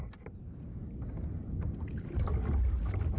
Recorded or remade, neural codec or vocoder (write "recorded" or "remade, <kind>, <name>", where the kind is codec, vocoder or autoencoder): recorded